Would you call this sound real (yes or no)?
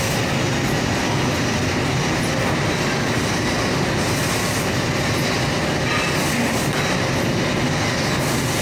yes